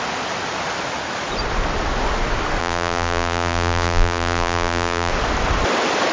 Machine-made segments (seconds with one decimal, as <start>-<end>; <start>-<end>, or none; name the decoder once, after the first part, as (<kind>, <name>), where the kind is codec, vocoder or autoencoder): 2.6-5.1 (vocoder, BigVGAN v2)